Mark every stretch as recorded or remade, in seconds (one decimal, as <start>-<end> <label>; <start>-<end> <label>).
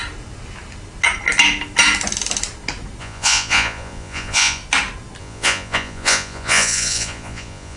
0.0-3.0 recorded; 3.0-4.6 remade; 4.6-5.2 recorded; 5.2-7.8 remade